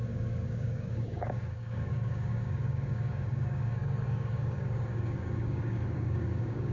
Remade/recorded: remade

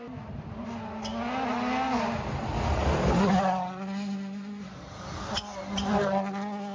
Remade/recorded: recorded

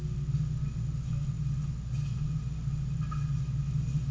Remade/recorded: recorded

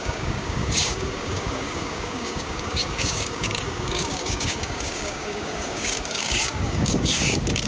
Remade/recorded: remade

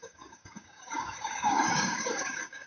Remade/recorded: remade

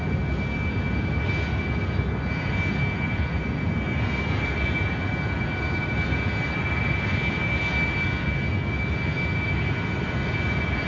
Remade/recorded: recorded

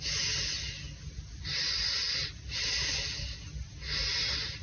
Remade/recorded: recorded